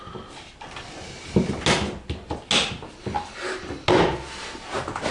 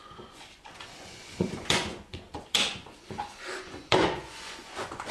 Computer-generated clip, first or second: second